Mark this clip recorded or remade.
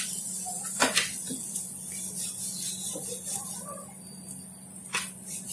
recorded